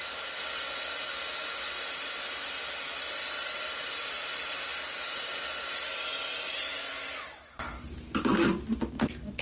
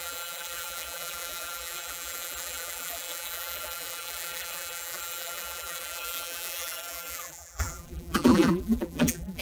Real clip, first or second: first